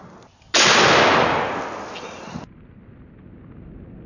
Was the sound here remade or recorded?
recorded